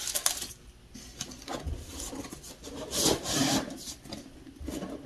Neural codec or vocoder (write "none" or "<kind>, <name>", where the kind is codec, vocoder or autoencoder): none